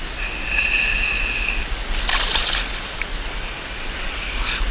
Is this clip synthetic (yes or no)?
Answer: no